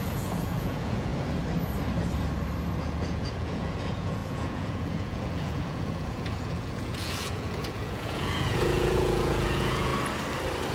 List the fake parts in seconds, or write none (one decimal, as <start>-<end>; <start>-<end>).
0.0-1.1; 2.8-9.9